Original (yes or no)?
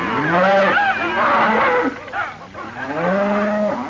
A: yes